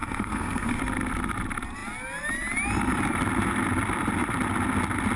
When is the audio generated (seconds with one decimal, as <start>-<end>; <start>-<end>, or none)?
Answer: 0.0-0.8